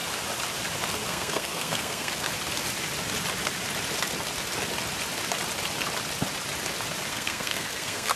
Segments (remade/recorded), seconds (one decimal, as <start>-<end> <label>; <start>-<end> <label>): 0.0-1.1 recorded; 1.1-2.3 remade; 2.3-7.1 recorded; 7.1-8.2 remade